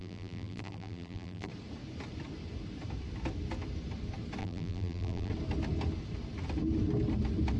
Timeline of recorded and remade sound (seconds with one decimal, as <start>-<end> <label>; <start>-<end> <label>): 0.0-1.5 remade; 1.5-4.4 recorded; 4.4-5.3 remade; 5.3-7.6 recorded